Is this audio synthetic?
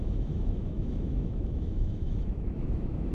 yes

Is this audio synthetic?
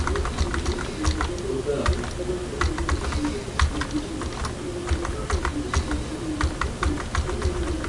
no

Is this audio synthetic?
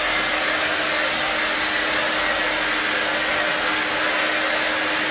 no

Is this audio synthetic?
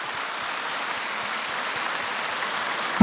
no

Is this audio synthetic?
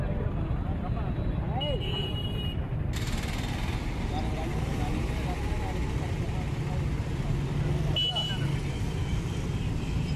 no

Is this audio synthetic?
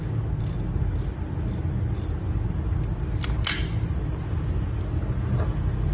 no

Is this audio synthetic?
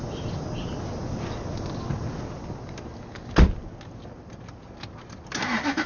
no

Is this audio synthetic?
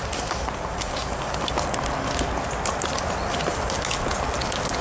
no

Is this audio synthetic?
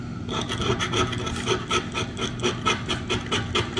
no